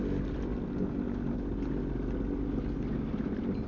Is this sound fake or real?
real